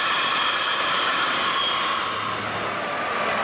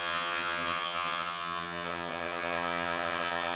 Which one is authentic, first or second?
first